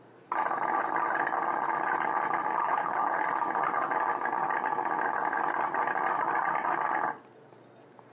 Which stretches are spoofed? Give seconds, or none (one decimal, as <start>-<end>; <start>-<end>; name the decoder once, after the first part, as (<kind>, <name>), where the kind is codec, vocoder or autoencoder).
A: 2.6-3.2 (codec, HILCodec)